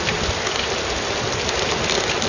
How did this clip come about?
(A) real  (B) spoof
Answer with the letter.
A